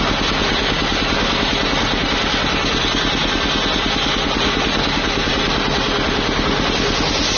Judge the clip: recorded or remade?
recorded